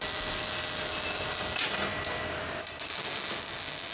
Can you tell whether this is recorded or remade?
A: recorded